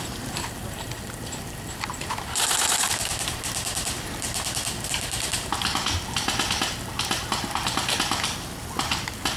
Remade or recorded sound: recorded